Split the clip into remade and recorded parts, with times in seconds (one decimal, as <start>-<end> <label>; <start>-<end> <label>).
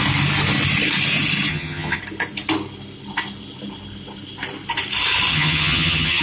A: 0.0-1.5 recorded; 1.5-2.0 remade; 2.0-5.3 recorded; 5.3-6.2 remade